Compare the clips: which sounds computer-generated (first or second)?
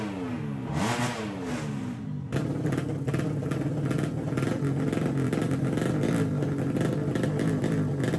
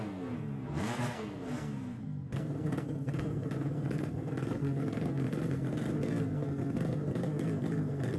second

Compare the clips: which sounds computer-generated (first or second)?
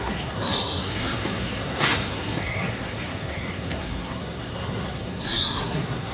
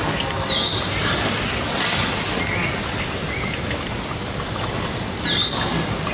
first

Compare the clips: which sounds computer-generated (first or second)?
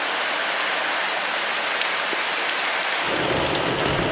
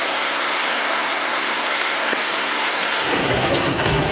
second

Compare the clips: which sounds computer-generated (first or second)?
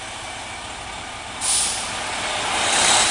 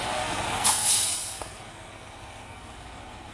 second